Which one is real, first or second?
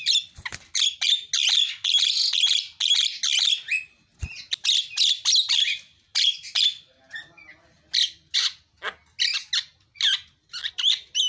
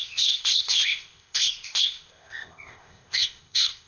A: first